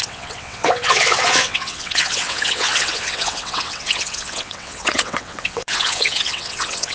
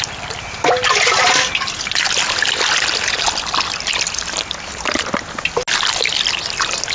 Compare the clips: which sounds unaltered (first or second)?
second